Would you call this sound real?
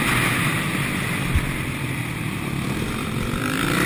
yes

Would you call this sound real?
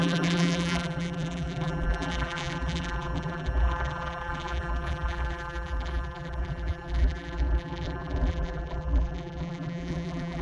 no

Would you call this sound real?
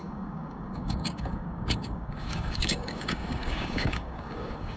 no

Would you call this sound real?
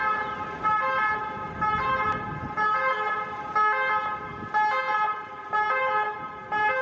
yes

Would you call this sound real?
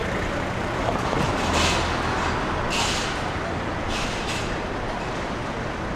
yes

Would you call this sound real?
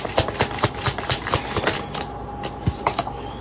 yes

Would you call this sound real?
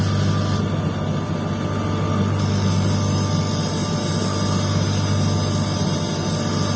yes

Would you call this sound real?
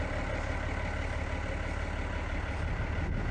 yes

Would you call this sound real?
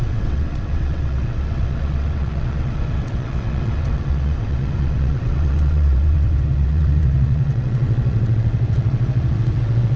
no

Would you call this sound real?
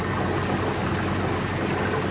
yes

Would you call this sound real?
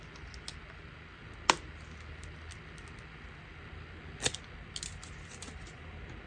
yes